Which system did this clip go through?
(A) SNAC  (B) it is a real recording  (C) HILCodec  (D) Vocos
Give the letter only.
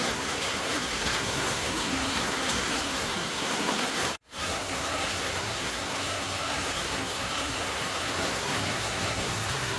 A